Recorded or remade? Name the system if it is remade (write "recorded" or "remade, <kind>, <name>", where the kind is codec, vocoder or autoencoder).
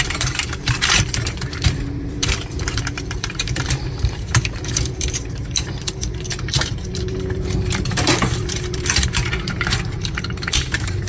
remade, vocoder, BigVGAN v2